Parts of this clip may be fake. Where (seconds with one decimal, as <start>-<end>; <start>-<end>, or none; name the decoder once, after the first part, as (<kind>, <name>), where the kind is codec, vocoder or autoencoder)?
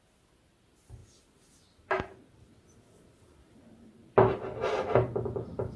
none